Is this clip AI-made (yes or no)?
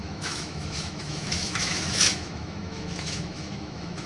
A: yes